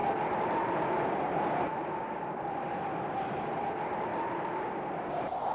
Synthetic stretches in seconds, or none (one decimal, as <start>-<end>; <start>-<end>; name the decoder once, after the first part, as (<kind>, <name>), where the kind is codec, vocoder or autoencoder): 0.0-3.0 (vocoder, BigVGAN v2)